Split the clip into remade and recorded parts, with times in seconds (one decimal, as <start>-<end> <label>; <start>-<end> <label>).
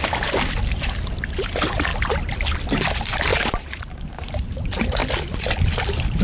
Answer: 0.0-1.9 remade; 1.9-2.9 recorded; 2.9-5.0 remade; 5.0-5.6 recorded; 5.6-6.2 remade